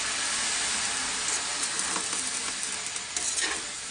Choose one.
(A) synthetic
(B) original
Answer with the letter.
B